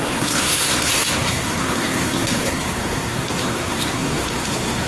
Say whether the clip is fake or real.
fake